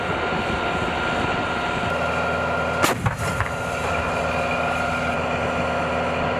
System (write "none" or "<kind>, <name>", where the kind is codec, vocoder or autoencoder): none